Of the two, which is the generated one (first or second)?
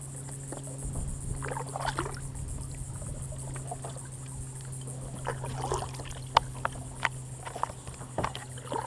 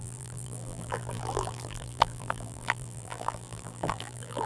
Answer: second